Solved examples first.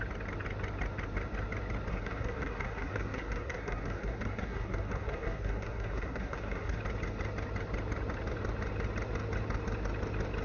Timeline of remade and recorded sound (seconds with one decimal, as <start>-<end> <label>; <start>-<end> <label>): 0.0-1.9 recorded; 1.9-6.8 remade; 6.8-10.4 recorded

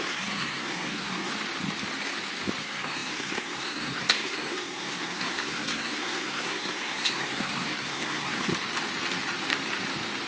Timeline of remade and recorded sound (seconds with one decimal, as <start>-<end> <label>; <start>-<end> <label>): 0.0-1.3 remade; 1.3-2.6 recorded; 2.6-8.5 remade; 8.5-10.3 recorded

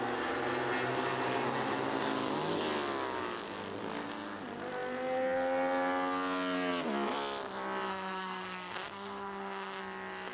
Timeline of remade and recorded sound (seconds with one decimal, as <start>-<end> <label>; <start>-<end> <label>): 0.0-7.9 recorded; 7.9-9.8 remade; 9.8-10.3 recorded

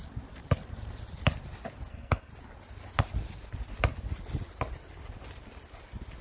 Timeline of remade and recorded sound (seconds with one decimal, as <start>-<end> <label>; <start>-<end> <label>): 0.0-1.9 recorded; 1.9-2.3 remade; 2.3-6.2 recorded

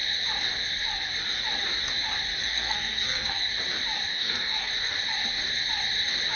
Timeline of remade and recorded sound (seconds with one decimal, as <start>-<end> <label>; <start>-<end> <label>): 0.0-2.4 recorded; 2.4-3.5 remade; 3.5-4.1 recorded; 4.1-4.7 remade; 4.7-6.4 recorded